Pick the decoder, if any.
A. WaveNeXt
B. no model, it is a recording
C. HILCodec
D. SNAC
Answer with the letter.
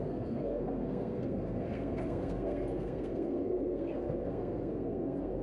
D